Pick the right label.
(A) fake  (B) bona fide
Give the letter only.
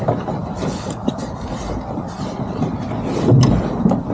B